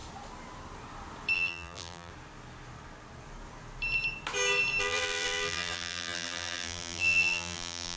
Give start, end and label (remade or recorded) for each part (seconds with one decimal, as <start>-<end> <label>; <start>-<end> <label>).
0.0-1.3 recorded; 1.3-2.1 remade; 2.1-4.8 recorded; 4.8-8.0 remade